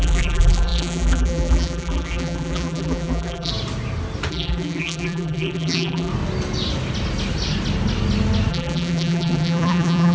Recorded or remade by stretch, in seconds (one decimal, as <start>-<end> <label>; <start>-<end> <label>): 0.0-3.5 remade; 3.5-4.3 recorded; 4.3-6.1 remade; 6.1-8.5 recorded; 8.5-10.1 remade